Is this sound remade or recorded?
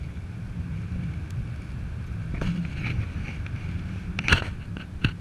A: recorded